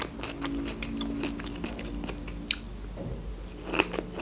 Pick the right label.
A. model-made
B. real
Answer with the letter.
B